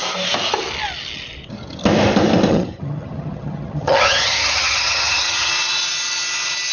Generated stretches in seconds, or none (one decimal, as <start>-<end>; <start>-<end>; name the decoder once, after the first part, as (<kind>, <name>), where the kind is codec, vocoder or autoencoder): 2.5-5.5 (vocoder, HiFi-GAN)